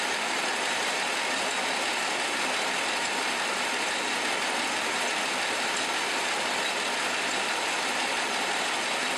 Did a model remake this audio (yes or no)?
no